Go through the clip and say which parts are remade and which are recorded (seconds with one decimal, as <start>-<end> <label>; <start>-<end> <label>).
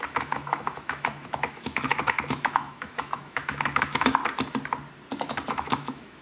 0.0-4.2 remade; 4.2-5.5 recorded; 5.5-6.2 remade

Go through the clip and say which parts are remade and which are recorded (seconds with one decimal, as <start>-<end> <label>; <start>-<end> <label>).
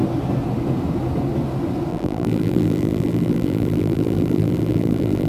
0.0-1.9 recorded; 1.9-5.3 remade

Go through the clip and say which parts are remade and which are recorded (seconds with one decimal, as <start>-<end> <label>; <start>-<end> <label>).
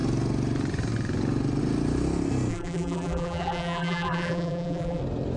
0.0-2.5 recorded; 2.5-5.0 remade; 5.0-5.4 recorded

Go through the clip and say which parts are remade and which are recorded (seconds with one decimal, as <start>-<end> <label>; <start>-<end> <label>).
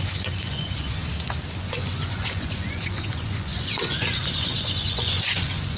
0.0-1.0 remade; 1.0-1.6 recorded; 1.6-5.8 remade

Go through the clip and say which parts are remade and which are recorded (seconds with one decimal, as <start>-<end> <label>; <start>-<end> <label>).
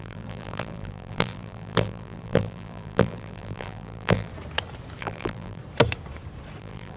0.0-4.3 remade; 4.3-5.0 recorded; 5.0-5.6 remade; 5.6-6.6 recorded; 6.6-7.0 remade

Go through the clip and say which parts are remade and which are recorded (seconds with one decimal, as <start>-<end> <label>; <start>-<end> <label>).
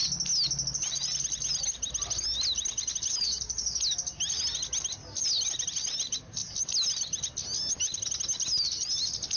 0.0-9.4 recorded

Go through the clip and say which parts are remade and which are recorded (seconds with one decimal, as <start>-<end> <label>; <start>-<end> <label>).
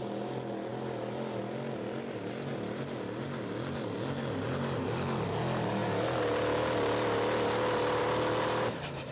0.0-9.1 recorded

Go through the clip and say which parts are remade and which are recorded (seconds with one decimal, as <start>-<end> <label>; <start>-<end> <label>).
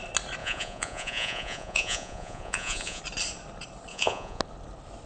0.0-0.4 recorded; 0.4-3.0 remade; 3.0-3.9 recorded; 3.9-4.4 remade; 4.4-5.1 recorded